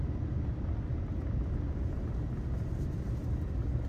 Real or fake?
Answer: real